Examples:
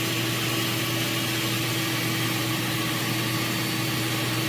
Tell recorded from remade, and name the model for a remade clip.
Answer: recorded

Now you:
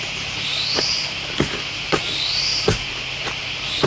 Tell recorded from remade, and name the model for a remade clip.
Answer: recorded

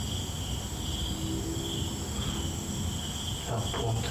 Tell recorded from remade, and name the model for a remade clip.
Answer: recorded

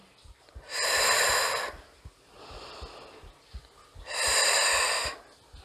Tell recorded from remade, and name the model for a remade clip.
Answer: recorded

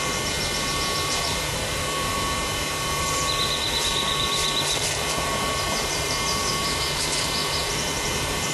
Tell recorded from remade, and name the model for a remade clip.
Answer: remade, vocoder, BigVGAN v2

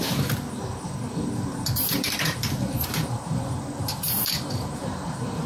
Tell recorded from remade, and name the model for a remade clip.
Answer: remade, vocoder, BigVGAN v2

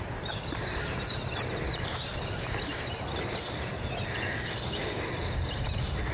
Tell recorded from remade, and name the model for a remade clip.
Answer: remade, vocoder, BigVGAN v2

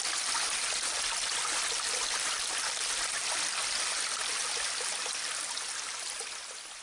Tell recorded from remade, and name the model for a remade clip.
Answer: recorded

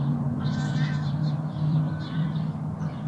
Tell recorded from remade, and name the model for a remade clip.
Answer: remade, vocoder, BigVGAN v2